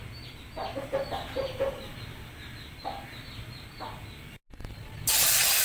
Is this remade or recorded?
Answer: recorded